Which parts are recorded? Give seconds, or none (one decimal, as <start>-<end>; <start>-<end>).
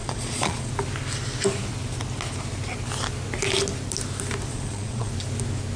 0.7-4.5; 5.1-5.8